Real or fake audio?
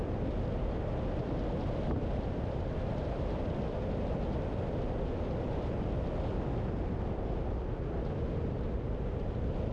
real